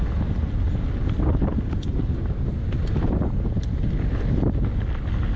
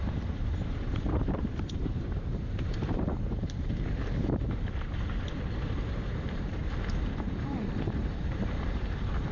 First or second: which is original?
first